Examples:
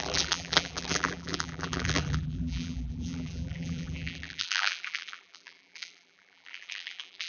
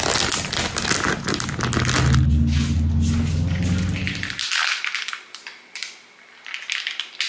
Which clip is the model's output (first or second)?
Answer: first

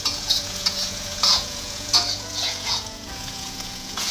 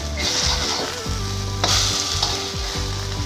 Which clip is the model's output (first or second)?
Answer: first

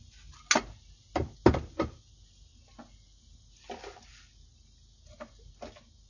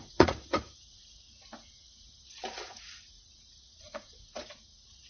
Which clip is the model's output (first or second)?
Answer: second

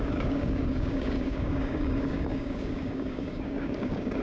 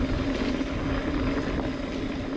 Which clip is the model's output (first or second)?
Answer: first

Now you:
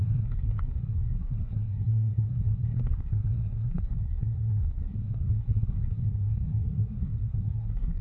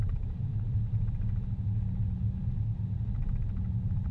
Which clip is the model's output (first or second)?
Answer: first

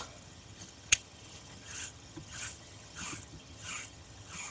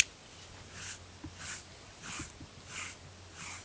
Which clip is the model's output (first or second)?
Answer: first